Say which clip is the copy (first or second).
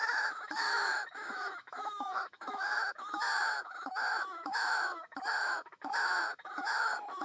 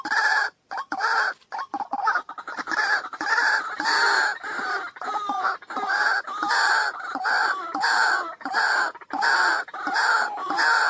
first